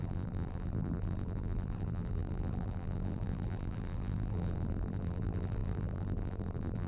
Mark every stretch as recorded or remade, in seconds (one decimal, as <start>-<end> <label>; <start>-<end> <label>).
0.0-6.9 remade